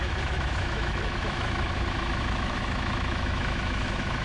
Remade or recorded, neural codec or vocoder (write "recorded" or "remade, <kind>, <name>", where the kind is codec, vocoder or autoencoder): remade, autoencoder, DAC-VAE